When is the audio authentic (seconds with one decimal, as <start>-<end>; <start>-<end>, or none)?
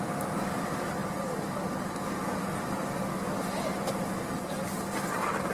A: 0.0-5.5